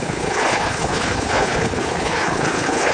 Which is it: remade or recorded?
remade